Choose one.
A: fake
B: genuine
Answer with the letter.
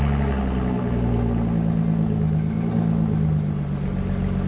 B